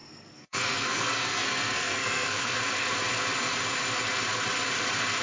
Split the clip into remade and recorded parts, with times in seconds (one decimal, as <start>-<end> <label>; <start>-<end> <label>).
0.0-2.6 remade; 2.6-5.2 recorded